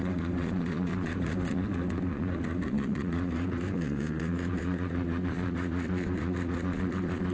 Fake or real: fake